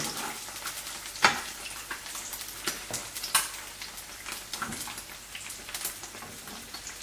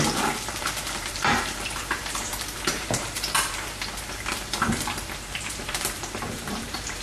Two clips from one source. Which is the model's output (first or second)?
second